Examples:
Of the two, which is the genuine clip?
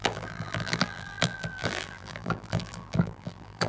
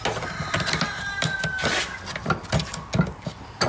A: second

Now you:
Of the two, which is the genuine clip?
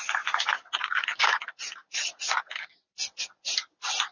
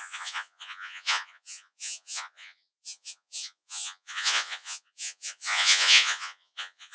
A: first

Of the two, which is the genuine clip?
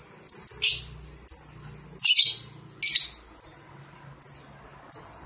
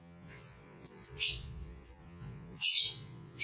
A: first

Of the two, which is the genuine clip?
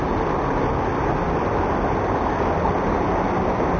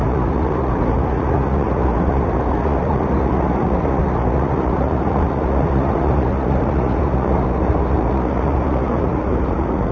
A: first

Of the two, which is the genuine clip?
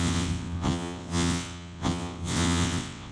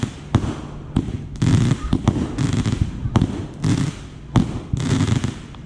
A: second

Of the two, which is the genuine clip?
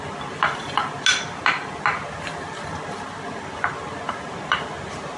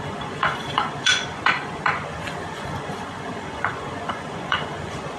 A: first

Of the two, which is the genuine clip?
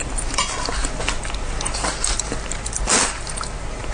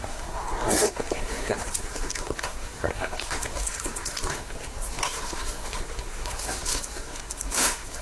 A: first